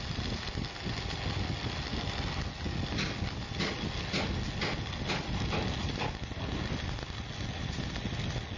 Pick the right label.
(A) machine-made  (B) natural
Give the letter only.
B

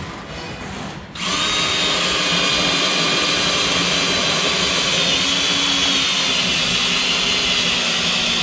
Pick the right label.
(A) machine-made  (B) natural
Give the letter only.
B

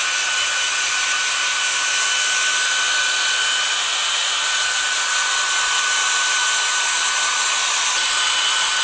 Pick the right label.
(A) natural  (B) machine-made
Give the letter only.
A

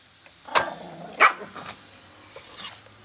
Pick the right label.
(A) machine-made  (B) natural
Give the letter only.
B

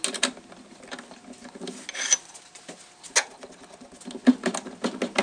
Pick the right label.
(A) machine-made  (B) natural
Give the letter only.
B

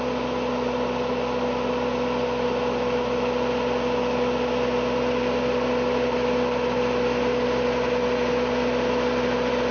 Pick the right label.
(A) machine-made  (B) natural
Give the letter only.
B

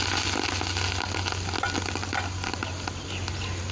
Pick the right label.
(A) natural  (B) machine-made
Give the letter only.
A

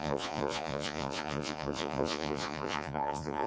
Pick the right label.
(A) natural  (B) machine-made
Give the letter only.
B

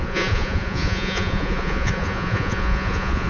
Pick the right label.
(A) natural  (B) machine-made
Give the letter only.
B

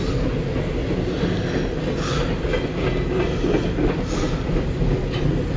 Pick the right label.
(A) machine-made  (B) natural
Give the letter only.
B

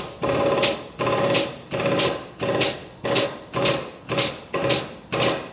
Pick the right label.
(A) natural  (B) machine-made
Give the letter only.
A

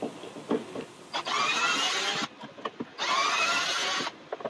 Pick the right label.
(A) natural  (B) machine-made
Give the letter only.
A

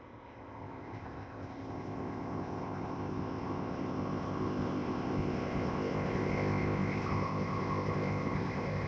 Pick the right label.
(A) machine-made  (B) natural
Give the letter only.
A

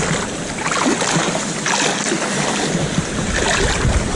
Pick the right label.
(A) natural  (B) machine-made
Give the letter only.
A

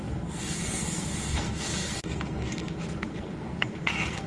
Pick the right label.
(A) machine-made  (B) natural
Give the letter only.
A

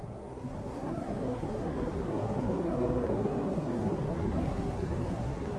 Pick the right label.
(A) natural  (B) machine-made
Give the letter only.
B